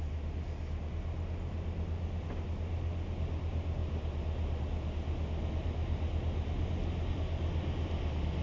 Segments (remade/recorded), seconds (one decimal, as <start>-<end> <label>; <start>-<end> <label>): 0.0-8.4 recorded

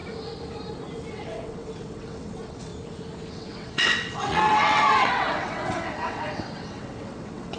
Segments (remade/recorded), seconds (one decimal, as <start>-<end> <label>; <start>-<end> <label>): 0.0-1.1 recorded; 1.1-2.7 remade; 2.7-3.3 recorded; 3.3-7.6 remade

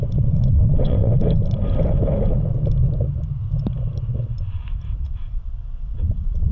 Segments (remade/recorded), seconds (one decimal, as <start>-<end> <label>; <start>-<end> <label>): 0.0-1.1 remade; 1.1-5.0 recorded; 5.0-6.5 remade

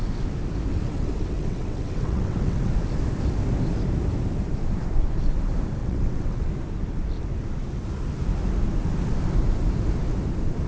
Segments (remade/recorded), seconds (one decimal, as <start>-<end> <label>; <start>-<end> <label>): 0.0-0.7 recorded; 0.7-2.7 remade; 2.7-5.8 recorded; 5.8-6.5 remade; 6.5-10.7 recorded

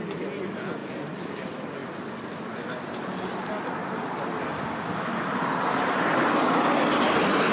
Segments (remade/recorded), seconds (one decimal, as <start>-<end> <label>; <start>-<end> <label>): 0.0-7.5 recorded

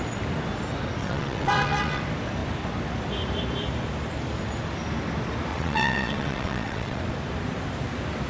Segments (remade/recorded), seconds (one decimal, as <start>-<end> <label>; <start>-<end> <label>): 0.0-1.0 recorded; 1.0-2.0 remade; 2.0-5.5 recorded; 5.5-7.0 remade; 7.0-8.3 recorded

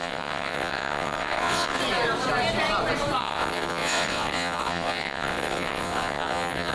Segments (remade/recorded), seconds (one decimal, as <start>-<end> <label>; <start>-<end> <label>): 0.0-1.8 remade; 1.8-3.2 recorded; 3.2-6.7 remade